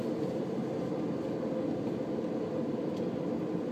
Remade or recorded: recorded